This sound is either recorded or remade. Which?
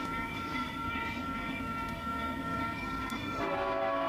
remade